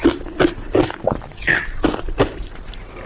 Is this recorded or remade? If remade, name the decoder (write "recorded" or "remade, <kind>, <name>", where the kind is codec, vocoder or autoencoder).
recorded